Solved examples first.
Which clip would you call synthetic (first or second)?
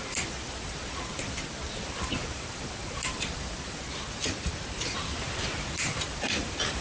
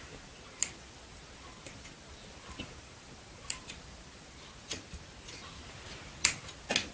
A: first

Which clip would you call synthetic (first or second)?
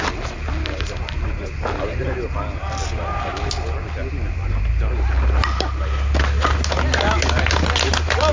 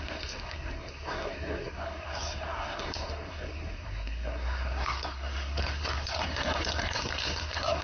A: second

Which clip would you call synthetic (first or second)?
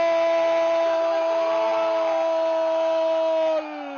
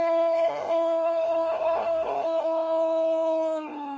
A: second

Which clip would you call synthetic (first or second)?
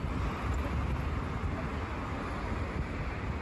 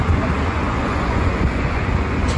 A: second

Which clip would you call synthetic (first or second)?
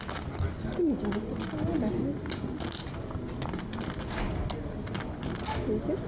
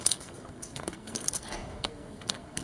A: second